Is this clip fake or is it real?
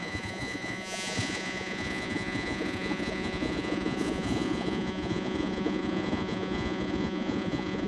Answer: fake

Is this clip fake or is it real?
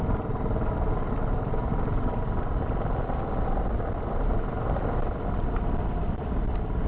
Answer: real